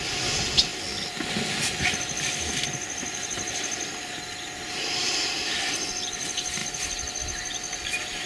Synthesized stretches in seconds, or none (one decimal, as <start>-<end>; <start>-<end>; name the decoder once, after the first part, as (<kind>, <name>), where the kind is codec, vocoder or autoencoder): none